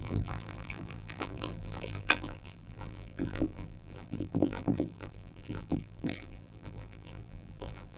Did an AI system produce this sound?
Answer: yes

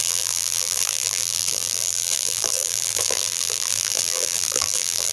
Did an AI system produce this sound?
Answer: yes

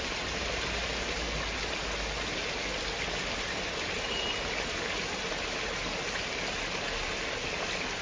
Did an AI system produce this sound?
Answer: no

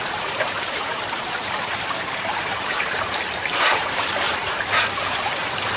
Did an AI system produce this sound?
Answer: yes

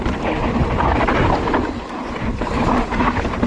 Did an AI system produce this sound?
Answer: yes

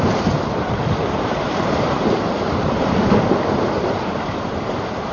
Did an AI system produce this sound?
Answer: yes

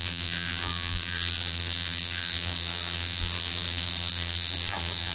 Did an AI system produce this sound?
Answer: yes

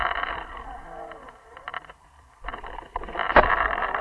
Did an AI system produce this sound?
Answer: yes